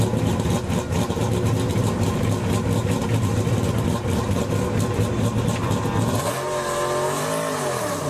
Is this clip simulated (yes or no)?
no